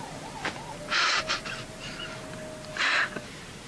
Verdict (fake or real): real